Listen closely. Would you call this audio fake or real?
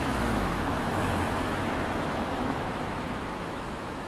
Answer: fake